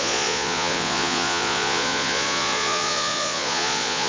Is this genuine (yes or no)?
no